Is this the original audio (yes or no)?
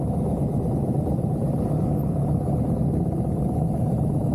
yes